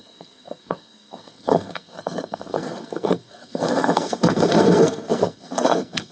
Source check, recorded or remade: remade